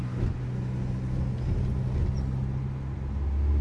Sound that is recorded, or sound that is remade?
recorded